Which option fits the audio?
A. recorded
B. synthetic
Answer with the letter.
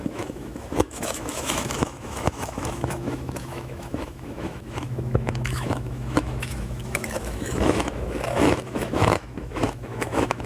B